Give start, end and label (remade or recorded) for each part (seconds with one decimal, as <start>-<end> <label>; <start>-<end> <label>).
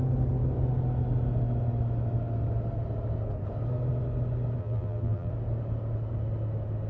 0.0-4.6 recorded; 4.6-5.3 remade; 5.3-6.9 recorded